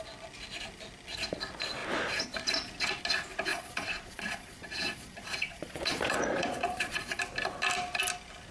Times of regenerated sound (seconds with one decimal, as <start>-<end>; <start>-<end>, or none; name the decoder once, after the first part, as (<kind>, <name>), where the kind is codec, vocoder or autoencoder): 3.5-7.2 (vocoder, Vocos)